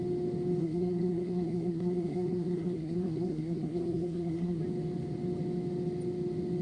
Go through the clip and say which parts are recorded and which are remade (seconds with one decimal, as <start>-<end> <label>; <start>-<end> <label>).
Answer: 0.0-0.6 recorded; 0.6-4.6 remade; 4.6-6.6 recorded